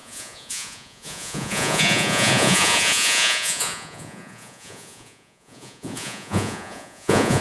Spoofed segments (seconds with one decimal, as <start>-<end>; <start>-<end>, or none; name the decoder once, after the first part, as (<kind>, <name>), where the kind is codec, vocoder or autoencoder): 0.0-7.4 (vocoder, Vocos)

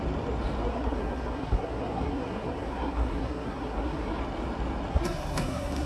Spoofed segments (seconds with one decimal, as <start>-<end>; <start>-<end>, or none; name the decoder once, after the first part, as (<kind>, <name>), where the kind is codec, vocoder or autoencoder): 0.7-4.2 (codec, SNAC); 4.9-5.9

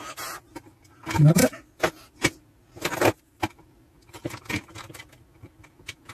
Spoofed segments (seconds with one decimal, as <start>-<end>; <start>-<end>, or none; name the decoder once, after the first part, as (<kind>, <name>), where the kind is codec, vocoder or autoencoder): none

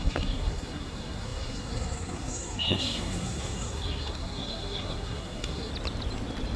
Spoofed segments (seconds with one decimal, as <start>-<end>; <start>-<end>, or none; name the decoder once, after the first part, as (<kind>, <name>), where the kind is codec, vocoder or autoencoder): 0.0-5.7 (codec, SNAC)

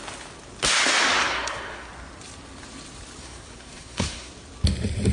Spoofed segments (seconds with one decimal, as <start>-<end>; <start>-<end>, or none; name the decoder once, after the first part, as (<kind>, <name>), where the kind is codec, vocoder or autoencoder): 1.2-1.9 (codec, SNAC); 3.2-4.3

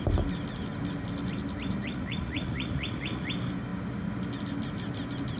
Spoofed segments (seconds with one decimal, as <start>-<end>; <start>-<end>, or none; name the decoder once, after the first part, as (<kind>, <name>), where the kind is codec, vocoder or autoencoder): 1.7-3.3 (vocoder, Vocos)

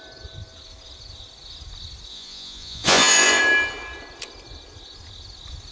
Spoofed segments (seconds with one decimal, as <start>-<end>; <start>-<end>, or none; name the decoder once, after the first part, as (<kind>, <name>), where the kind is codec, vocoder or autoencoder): 2.1-3.4 (vocoder, Vocos)